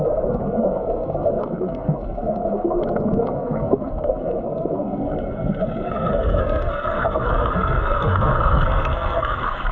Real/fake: fake